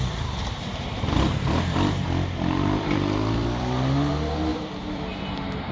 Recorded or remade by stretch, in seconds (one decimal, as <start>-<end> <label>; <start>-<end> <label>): 0.0-0.7 recorded; 0.7-4.1 remade; 4.1-4.5 recorded; 4.5-5.2 remade; 5.2-5.7 recorded